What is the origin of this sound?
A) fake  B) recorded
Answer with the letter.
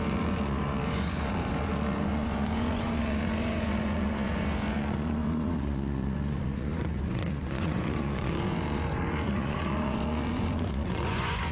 A